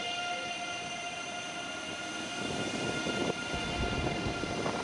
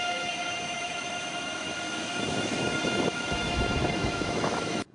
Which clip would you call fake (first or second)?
second